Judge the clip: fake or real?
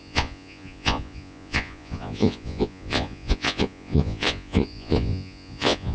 fake